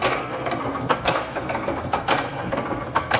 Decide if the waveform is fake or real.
fake